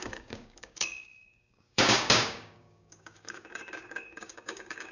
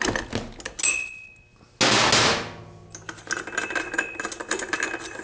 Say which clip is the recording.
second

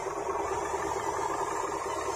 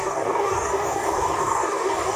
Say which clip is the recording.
first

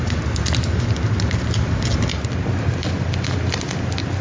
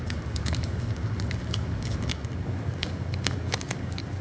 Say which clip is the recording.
first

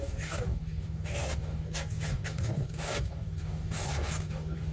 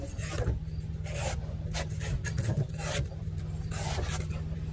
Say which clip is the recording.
second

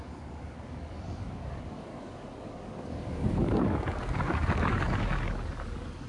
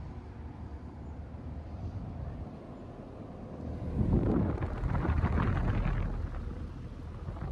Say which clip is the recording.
second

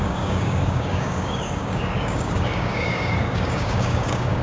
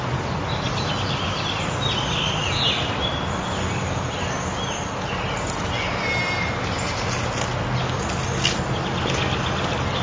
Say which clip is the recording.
second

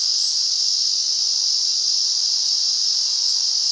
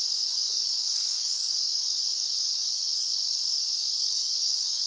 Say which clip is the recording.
first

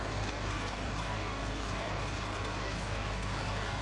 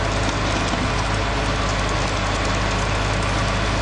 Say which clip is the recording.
second